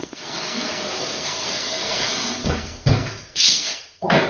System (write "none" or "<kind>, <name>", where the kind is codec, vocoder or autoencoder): codec, SNAC